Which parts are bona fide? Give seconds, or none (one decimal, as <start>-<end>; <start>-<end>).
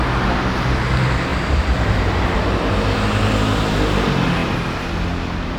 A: 0.0-1.3; 2.7-5.6